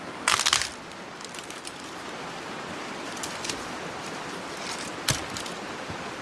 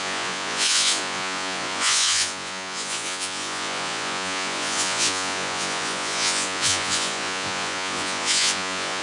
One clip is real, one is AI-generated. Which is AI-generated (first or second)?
second